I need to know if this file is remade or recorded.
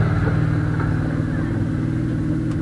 recorded